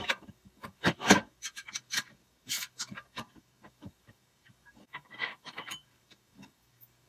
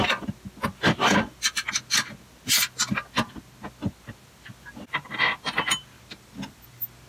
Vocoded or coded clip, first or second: first